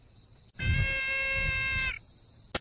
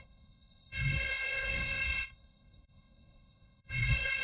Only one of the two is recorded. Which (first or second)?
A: first